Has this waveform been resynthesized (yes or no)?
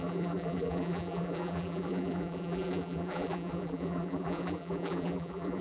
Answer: yes